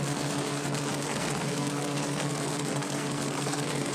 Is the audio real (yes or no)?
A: no